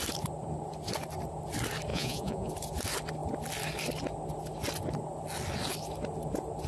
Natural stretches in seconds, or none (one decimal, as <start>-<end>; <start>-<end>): 0.0-1.9; 2.5-6.7